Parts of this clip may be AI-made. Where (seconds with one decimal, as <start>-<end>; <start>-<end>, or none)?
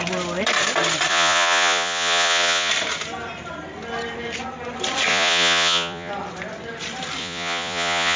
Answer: 1.1-2.7; 5.1-6.1; 7.2-8.2